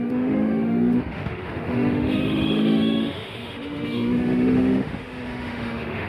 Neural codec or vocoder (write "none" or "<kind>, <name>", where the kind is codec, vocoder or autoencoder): autoencoder, DAC-VAE